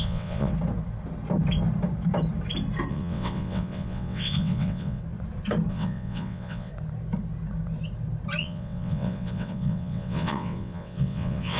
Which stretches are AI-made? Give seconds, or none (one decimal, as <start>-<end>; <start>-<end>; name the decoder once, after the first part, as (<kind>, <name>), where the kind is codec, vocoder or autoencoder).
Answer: 0.0-0.5 (vocoder, WaveNeXt); 2.9-5.0; 5.7-6.7; 8.4-11.6